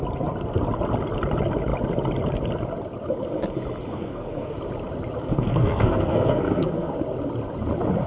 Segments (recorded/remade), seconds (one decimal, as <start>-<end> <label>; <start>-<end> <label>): 0.0-3.9 recorded; 3.9-4.5 remade; 4.5-5.2 recorded; 5.2-6.9 remade; 6.9-8.1 recorded